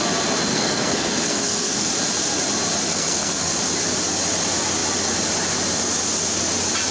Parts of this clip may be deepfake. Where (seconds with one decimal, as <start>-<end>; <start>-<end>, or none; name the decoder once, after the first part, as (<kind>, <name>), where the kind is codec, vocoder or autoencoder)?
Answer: 0.5-1.9 (codec, SNAC); 2.9-3.6